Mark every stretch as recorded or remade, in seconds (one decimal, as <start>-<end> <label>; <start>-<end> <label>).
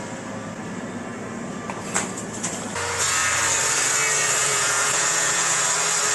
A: 0.0-4.4 recorded; 4.4-5.6 remade; 5.6-6.1 recorded